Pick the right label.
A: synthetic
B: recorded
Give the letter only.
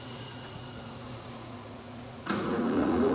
A